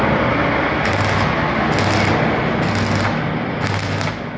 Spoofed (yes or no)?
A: no